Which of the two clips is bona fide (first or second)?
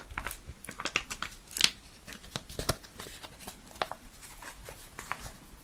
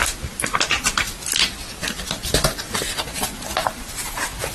first